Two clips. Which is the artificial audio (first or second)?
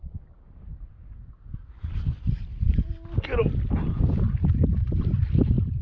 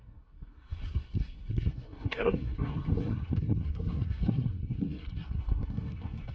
second